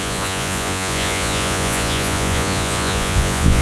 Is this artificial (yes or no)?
yes